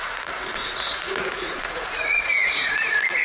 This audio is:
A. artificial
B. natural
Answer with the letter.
A